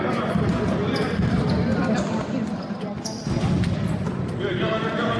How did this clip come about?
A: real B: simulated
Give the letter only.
A